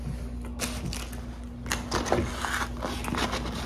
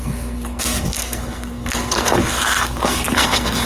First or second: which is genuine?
first